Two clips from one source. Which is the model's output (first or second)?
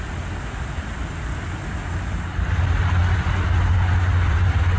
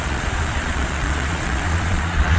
second